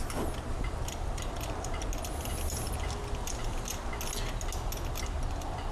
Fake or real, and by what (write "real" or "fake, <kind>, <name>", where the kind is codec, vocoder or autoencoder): real